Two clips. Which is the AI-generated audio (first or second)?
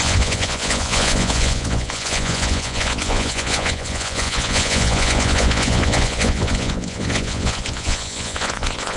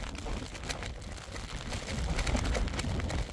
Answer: first